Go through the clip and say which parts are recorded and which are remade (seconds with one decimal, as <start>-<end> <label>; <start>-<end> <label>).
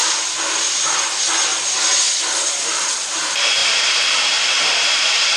0.0-0.5 recorded; 0.5-1.5 remade; 1.5-2.6 recorded; 2.6-5.4 remade